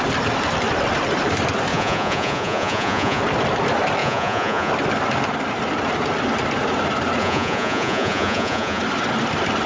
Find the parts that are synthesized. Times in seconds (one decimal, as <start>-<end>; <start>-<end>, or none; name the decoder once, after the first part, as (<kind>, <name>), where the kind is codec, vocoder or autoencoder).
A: 1.7-3.2 (vocoder, Vocos); 4.0-4.7; 7.2-8.8